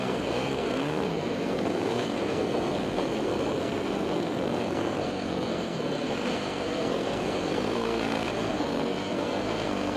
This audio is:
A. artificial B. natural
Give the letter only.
A